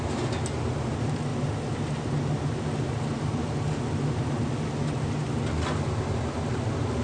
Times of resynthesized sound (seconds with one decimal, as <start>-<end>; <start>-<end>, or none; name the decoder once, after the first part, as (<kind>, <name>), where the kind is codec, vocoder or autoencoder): none